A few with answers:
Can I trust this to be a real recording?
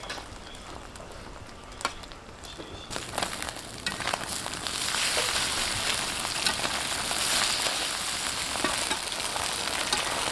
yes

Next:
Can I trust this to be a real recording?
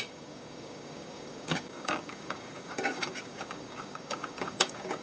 no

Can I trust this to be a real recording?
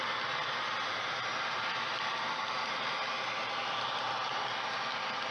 yes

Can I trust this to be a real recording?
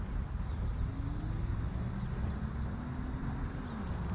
yes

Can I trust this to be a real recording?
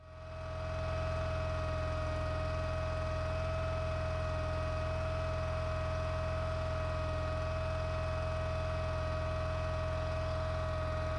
yes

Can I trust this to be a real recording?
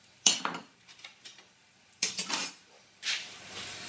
no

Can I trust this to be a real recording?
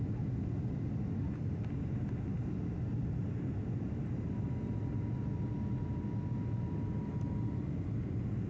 yes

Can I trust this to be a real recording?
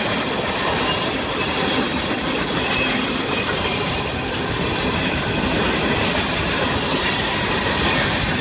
no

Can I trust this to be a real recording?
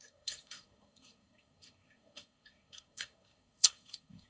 no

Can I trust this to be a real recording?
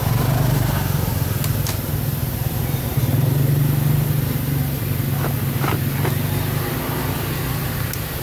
yes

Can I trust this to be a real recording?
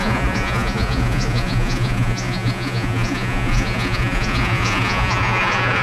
no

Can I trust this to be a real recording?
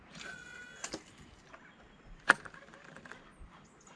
yes